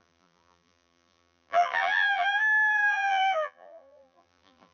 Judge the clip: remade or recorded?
remade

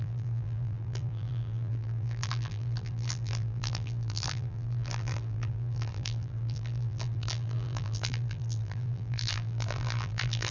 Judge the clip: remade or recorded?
remade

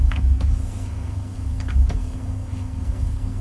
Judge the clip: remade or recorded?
remade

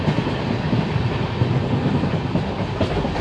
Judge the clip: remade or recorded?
recorded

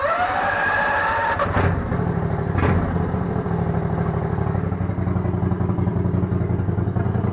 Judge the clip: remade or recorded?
recorded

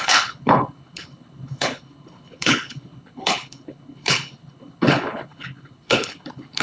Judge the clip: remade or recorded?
remade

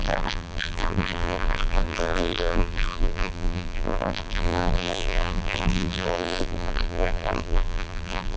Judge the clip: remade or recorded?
remade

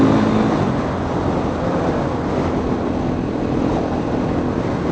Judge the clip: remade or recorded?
recorded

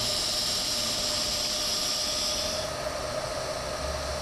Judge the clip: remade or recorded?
recorded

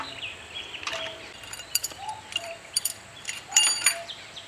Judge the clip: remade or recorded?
remade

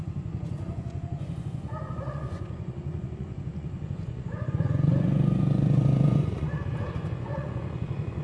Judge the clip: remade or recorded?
remade